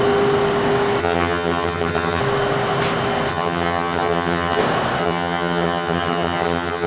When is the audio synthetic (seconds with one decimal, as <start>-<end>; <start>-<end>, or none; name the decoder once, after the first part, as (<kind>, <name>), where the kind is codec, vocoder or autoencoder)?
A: 1.0-2.2 (vocoder, HiFi-GAN); 3.3-4.6; 5.0-6.9